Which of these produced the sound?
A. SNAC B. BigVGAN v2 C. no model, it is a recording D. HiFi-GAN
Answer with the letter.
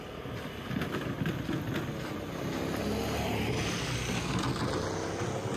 C